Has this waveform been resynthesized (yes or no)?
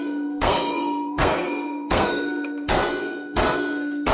yes